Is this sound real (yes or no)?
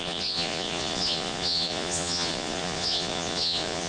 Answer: no